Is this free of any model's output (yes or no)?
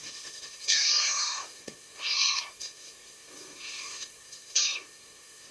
no